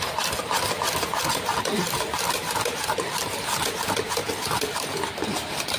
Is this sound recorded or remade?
recorded